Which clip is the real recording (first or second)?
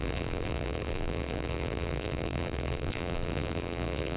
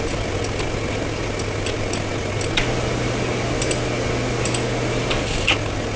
second